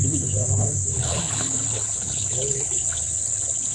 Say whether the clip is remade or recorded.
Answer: remade